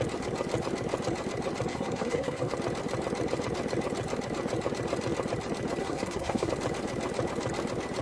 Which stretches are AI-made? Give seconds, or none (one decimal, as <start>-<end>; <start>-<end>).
1.7-2.5; 5.8-6.5